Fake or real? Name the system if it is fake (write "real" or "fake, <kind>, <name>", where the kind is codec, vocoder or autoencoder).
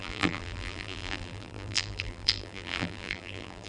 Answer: fake, vocoder, BigVGAN v2